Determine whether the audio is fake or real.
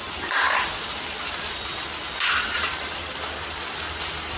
fake